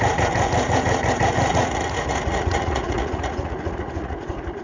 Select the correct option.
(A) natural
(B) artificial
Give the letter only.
B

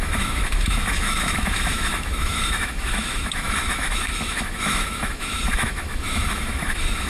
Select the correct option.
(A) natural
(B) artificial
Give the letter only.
B